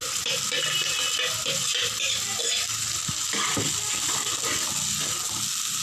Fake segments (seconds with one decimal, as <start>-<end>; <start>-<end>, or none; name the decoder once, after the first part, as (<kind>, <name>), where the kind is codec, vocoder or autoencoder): 1.8-2.4 (vocoder, BigVGAN v2); 3.0-4.5